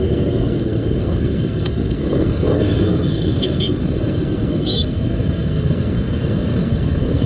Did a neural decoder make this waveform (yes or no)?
yes